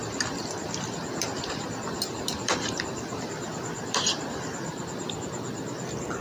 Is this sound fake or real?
fake